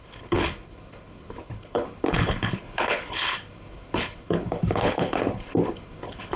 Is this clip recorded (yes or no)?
no